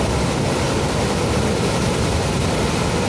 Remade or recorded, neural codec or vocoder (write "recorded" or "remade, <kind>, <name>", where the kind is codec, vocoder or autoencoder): recorded